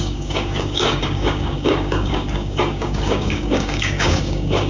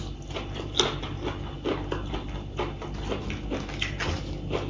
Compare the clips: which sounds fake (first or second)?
first